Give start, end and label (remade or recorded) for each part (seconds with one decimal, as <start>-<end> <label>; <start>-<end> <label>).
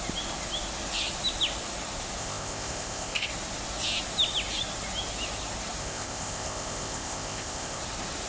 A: 0.0-2.2 recorded; 2.2-3.3 remade; 3.3-5.8 recorded; 5.8-7.8 remade; 7.8-8.3 recorded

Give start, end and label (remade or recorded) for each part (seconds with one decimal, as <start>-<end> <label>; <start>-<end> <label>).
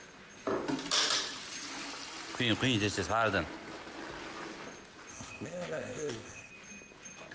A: 0.0-5.1 recorded; 5.1-6.5 remade; 6.5-7.3 recorded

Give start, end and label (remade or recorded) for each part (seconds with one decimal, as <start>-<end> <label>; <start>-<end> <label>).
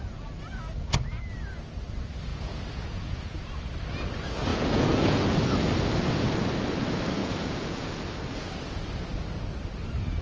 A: 0.0-2.3 recorded; 2.3-3.5 remade; 3.5-4.5 recorded; 4.5-5.2 remade; 5.2-7.2 recorded; 7.2-8.0 remade; 8.0-10.2 recorded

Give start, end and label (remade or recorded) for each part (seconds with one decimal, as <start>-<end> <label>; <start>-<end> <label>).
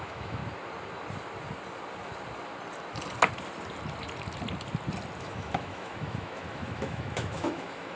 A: 0.0-0.4 remade; 0.4-5.2 recorded; 5.2-8.0 remade